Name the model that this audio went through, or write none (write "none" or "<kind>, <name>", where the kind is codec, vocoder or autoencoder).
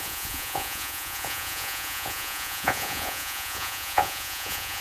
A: vocoder, Vocos